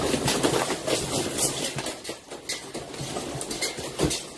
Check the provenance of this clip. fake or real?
real